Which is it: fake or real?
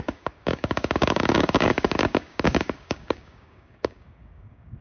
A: fake